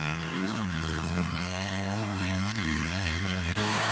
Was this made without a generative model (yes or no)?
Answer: no